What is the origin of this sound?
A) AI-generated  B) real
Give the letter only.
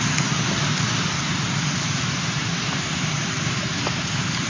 A